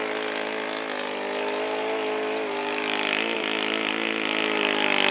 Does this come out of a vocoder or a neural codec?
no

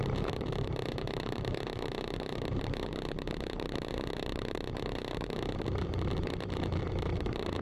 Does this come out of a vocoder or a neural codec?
yes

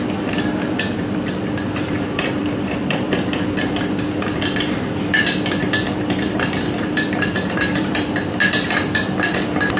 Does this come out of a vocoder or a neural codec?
yes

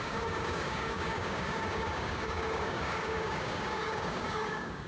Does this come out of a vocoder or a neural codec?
yes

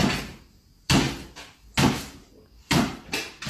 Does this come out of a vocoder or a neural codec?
no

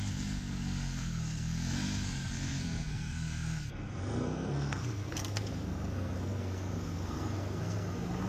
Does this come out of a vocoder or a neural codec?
yes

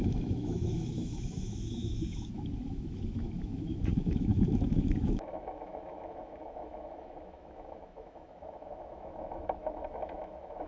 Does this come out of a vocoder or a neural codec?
yes